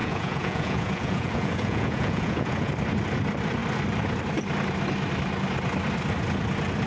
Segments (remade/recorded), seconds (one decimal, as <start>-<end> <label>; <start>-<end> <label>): 0.0-2.7 remade; 2.7-6.9 recorded